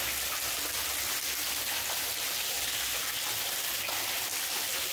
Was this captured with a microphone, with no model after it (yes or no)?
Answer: yes